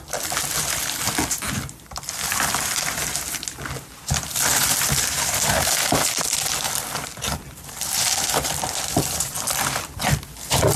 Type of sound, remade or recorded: remade